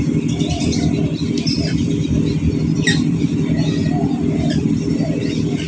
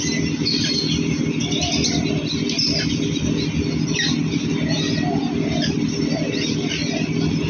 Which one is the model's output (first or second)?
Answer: first